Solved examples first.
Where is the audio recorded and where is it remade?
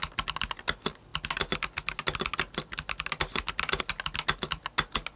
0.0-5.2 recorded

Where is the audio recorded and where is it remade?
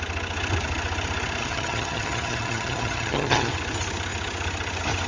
0.0-1.4 recorded; 1.4-3.5 remade; 3.5-5.1 recorded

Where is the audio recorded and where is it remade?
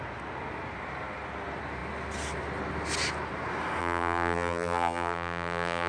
0.0-3.8 recorded; 3.8-5.9 remade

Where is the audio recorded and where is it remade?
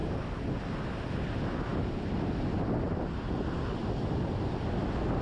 0.0-5.2 recorded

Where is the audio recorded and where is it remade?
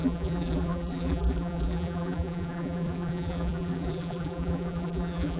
0.0-5.4 remade